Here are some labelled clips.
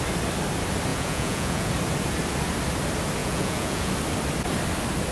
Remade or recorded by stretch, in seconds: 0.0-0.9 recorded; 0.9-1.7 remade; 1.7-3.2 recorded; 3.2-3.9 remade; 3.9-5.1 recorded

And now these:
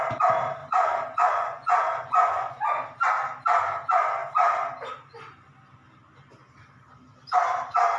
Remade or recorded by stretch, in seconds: 0.0-0.6 recorded; 0.6-3.0 remade; 3.0-8.0 recorded

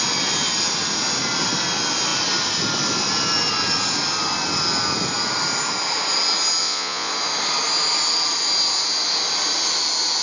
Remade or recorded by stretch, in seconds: 0.0-6.6 recorded; 6.6-7.1 remade; 7.1-10.2 recorded

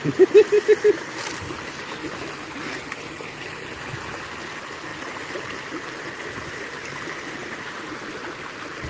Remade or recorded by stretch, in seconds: 0.0-7.4 recorded; 7.4-7.9 remade; 7.9-8.9 recorded

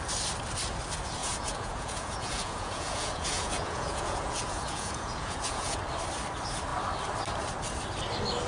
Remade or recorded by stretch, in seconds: 0.0-1.2 recorded; 1.2-5.8 remade; 5.8-8.5 recorded